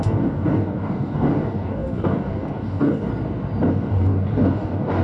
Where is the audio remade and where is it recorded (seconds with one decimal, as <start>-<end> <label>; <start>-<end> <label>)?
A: 0.0-3.1 remade; 3.1-3.7 recorded; 3.7-5.0 remade